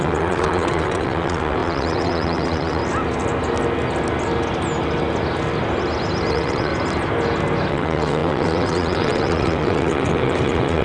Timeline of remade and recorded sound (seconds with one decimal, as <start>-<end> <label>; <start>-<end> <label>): 0.0-2.8 remade; 2.8-6.3 recorded; 6.3-6.7 remade; 6.7-7.7 recorded; 7.7-10.8 remade